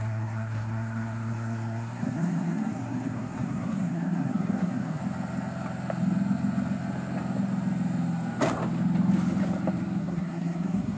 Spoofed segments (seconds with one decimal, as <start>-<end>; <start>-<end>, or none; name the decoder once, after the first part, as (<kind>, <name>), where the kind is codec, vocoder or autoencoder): 0.0-5.0 (codec, SNAC); 10.0-11.0